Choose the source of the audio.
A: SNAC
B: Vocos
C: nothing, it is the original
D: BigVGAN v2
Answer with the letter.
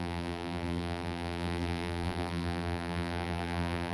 D